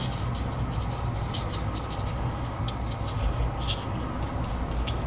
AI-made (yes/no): no